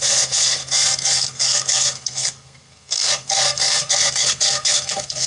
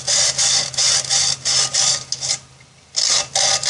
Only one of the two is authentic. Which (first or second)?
second